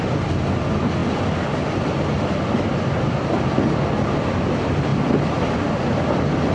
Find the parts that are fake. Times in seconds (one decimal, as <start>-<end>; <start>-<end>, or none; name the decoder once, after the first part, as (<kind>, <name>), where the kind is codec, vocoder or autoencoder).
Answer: none